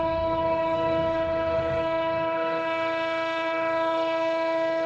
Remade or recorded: remade